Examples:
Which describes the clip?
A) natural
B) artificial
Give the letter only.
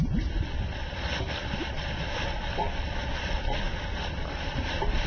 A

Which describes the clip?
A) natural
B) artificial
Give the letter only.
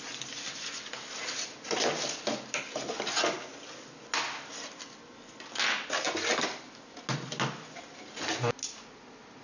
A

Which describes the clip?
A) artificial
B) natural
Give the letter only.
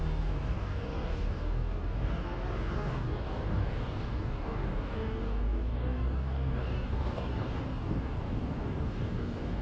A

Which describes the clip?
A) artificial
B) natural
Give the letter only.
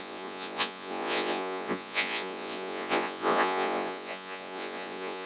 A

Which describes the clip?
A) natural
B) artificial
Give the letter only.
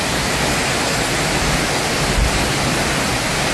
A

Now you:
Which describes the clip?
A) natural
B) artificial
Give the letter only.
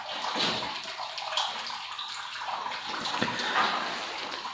A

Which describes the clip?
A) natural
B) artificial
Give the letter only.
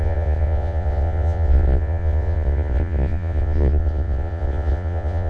B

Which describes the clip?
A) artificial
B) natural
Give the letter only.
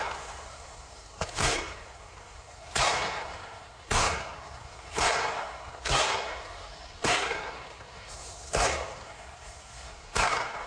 A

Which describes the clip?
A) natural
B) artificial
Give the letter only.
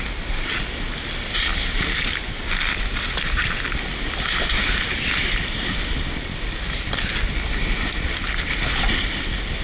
A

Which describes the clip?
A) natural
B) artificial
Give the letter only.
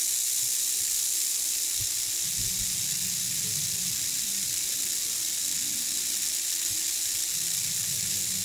A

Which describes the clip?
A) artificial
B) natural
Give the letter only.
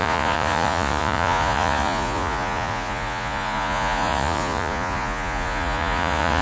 A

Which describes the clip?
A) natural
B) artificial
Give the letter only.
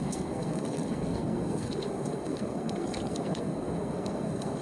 B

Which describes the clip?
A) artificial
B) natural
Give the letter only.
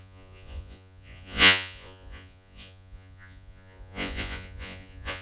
A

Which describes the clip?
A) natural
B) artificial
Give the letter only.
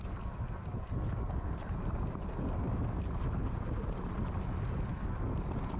A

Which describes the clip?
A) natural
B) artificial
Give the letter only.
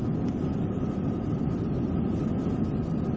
A